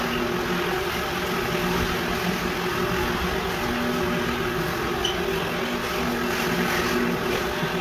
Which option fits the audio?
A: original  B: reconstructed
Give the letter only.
A